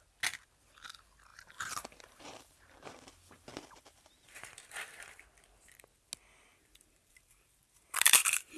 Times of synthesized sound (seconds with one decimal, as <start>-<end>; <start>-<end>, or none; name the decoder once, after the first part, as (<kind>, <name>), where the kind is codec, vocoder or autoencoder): 1.3-5.2 (vocoder, BigVGAN v2); 6.5-8.6